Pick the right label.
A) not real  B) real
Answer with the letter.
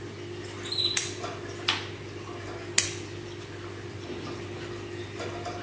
B